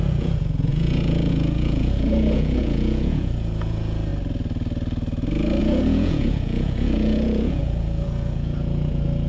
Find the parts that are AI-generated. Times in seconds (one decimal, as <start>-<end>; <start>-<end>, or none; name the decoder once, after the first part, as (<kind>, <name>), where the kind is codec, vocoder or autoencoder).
0.0-4.1 (vocoder, Vocos); 5.6-9.3